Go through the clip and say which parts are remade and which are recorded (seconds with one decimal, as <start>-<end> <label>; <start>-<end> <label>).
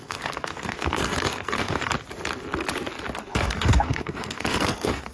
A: 0.0-1.9 remade; 1.9-3.2 recorded; 3.2-5.1 remade